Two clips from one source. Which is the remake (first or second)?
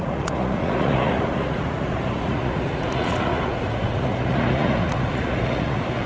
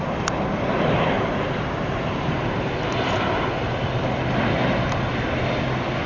first